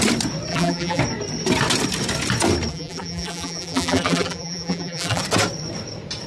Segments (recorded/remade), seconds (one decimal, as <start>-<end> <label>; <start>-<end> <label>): 0.0-0.5 recorded; 0.5-1.0 remade; 1.0-2.7 recorded; 2.7-5.2 remade; 5.2-6.3 recorded